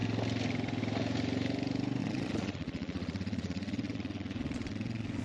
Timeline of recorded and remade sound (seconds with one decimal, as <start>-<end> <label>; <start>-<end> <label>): 0.0-2.0 recorded; 2.0-5.2 remade